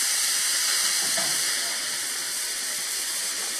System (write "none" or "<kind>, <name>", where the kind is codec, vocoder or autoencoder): none